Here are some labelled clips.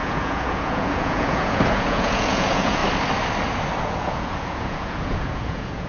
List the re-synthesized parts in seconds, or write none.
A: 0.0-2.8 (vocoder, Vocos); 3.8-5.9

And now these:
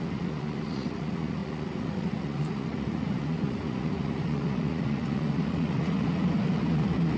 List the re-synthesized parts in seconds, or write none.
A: 0.0-7.2 (vocoder, Vocos)

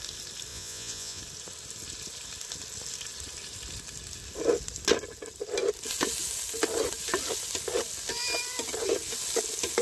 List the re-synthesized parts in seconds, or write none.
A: 0.5-1.2 (vocoder, Vocos)

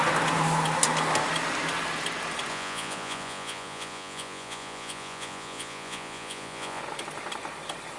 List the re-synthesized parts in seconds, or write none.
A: 2.5-6.8 (vocoder, Vocos)

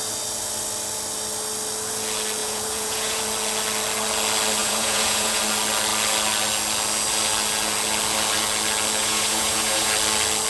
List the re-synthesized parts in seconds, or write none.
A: 2.4-3.2 (vocoder, Vocos); 4.6-5.4; 9.0-9.9